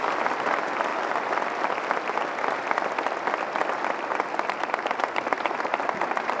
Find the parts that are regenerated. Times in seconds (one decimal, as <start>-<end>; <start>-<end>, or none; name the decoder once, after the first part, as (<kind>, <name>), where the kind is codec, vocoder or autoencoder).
0.0-0.9 (vocoder, BigVGAN v2); 4.6-6.4